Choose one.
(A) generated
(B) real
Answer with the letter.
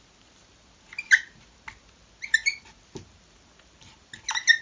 B